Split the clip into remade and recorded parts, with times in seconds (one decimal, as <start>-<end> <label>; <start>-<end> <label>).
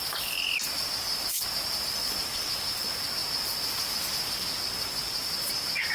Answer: 0.0-5.9 recorded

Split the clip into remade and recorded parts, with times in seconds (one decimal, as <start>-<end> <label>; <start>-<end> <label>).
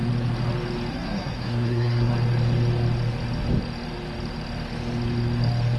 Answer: 0.0-0.9 recorded; 0.9-2.1 remade; 2.1-5.8 recorded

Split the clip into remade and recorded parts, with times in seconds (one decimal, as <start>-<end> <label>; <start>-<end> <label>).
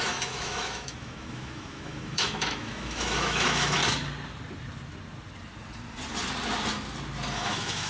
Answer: 0.0-3.8 remade; 3.8-7.3 recorded; 7.3-7.9 remade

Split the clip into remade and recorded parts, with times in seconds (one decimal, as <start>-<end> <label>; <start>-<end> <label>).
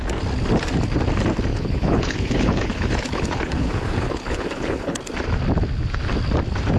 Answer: 0.0-1.5 recorded; 1.5-5.0 remade; 5.0-6.8 recorded